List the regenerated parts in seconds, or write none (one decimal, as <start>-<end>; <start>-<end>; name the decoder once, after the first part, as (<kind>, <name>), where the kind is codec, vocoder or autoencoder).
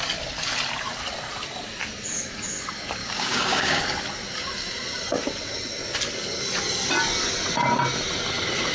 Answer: 3.0-3.8 (codec, DAC)